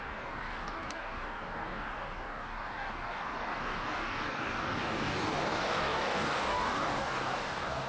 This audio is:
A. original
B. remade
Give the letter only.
B